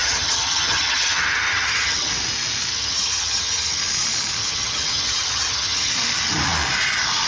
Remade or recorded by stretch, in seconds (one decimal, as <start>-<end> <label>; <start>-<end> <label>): 0.0-2.1 remade; 2.1-2.7 recorded; 2.7-3.8 remade; 3.8-4.4 recorded; 4.4-5.9 remade; 5.9-7.3 recorded